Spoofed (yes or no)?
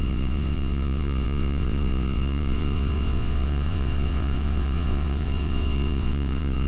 yes